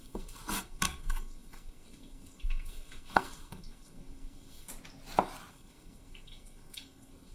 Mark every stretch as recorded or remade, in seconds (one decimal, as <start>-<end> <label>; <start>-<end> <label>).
0.0-4.7 remade; 4.7-5.5 recorded; 5.5-7.3 remade